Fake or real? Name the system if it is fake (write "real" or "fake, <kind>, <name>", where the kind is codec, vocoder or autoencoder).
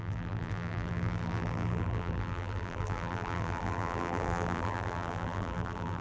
fake, vocoder, BigVGAN v2